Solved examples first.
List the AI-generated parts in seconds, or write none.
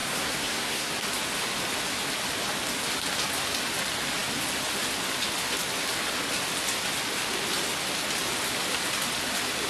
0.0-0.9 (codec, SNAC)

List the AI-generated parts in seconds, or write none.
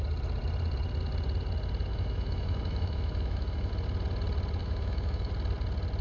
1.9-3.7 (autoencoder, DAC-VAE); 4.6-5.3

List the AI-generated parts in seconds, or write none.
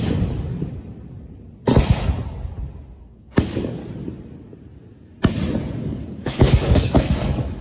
0.0-0.6 (codec, DAC); 3.0-3.8; 5.8-7.6